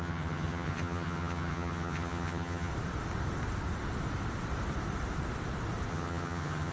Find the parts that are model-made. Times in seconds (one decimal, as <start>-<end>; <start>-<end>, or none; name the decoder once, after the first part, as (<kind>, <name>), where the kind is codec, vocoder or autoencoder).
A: 0.0-2.7 (vocoder, HiFi-GAN); 5.9-6.7